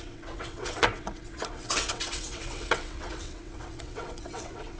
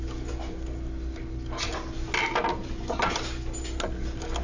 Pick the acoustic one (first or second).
second